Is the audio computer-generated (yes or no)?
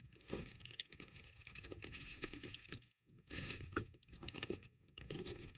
yes